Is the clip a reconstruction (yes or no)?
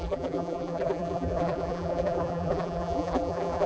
yes